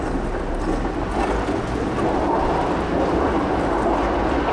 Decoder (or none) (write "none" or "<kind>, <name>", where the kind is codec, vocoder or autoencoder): none